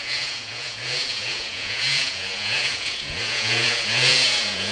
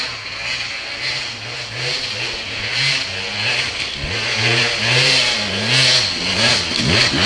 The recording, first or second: second